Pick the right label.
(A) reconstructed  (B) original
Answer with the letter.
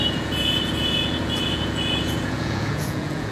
A